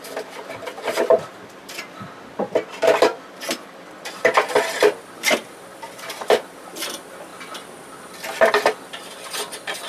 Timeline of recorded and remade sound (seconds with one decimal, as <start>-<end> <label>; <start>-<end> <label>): 0.0-9.9 remade